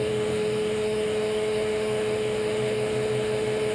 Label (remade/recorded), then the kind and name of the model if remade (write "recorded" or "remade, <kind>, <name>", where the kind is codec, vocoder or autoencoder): remade, autoencoder, DAC-VAE